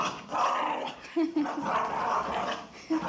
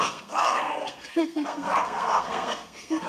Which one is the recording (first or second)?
first